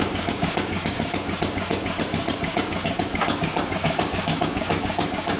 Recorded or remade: remade